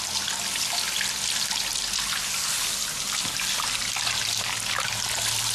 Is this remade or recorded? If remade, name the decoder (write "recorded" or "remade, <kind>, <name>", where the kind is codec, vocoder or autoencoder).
recorded